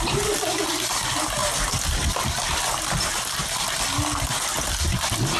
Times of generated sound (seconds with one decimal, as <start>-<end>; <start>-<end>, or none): none